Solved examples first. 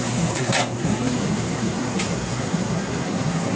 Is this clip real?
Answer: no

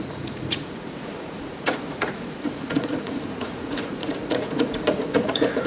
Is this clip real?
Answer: no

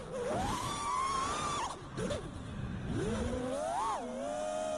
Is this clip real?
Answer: yes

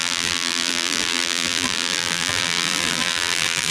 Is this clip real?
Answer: no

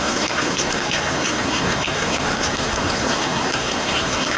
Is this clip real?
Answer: no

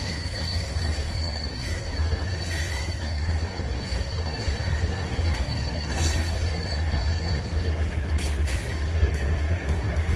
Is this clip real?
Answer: no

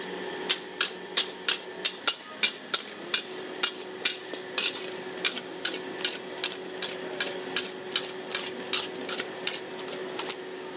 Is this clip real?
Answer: yes